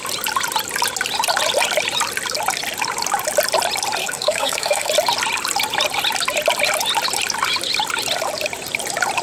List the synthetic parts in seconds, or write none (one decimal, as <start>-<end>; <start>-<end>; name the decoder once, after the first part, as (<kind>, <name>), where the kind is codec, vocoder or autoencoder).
4.0-4.9 (codec, SNAC)